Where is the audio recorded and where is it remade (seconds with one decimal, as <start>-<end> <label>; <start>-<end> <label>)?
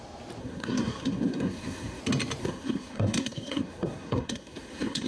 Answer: 0.0-0.4 recorded; 0.4-2.0 remade; 2.0-2.4 recorded; 2.4-5.1 remade